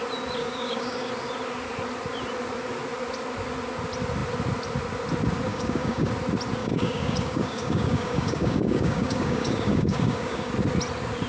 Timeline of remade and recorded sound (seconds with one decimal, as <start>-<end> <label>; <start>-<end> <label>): 0.0-0.4 recorded; 0.4-1.1 remade; 1.1-5.5 recorded; 5.5-6.1 remade; 6.1-6.6 recorded; 6.6-10.5 remade; 10.5-11.3 recorded